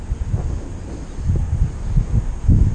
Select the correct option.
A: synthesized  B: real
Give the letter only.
B